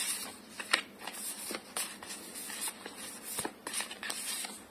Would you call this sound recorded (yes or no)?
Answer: yes